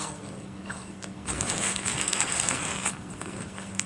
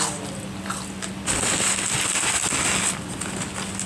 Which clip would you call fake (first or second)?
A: first